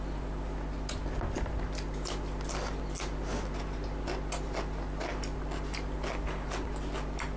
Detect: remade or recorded recorded